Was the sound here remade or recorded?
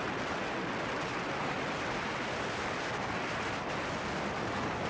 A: recorded